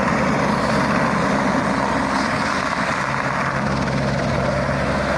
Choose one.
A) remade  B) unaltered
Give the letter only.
B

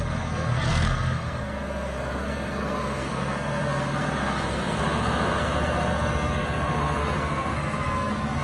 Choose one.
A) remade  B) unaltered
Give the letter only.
A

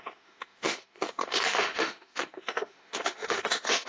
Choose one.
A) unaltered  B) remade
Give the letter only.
B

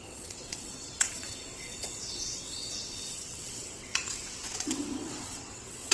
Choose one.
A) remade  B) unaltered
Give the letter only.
A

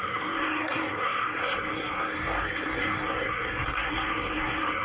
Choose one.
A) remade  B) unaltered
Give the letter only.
A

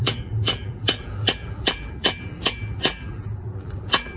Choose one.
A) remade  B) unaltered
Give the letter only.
A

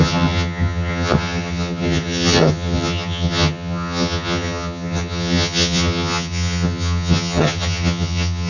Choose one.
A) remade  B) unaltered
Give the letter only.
A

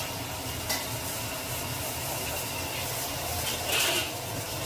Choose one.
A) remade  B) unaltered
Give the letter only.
B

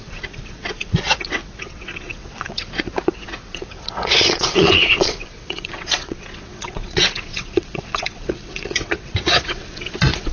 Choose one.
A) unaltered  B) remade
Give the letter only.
B